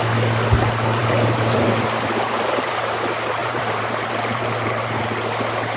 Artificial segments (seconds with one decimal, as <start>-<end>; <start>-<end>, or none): 1.0-2.7; 3.4-5.0